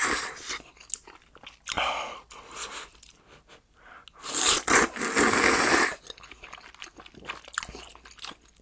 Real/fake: real